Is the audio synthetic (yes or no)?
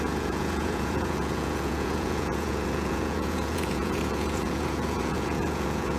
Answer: yes